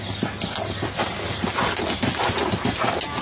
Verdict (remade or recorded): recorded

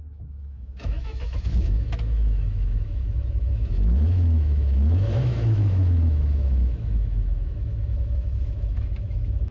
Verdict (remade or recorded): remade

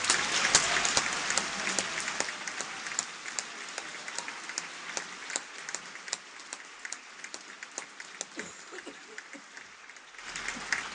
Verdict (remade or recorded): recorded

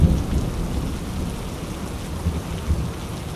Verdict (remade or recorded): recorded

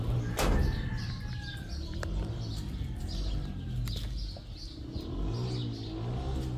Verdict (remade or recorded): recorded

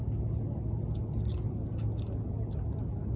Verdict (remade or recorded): recorded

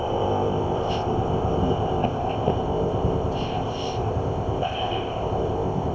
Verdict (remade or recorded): remade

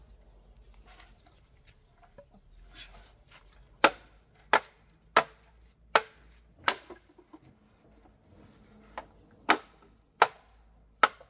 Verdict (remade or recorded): recorded